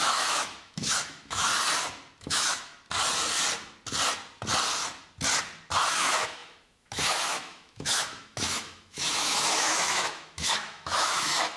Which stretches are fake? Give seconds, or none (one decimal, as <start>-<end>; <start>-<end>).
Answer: 0.0-1.5; 2.2-2.7; 5.9-11.6